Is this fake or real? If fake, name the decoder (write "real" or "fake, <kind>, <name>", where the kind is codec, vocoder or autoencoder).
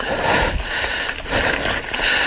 real